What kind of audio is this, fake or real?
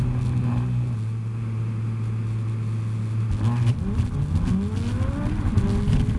real